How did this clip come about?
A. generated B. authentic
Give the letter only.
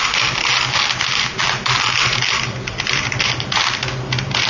B